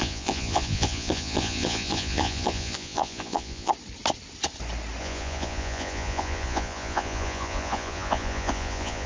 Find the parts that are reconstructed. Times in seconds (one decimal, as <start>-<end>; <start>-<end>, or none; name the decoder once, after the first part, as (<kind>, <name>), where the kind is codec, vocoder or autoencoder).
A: 0.0-3.7 (vocoder, Vocos); 5.0-9.1